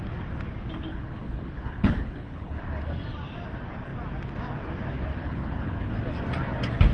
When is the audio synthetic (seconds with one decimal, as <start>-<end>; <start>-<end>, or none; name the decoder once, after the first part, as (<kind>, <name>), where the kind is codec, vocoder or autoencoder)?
0.9-2.6 (codec, HILCodec); 5.2-5.9